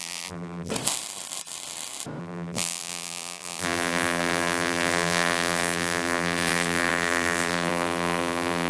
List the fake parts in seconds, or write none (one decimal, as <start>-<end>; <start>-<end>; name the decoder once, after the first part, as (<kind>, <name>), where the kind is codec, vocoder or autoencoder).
0.0-0.7 (vocoder, BigVGAN v2); 2.2-8.7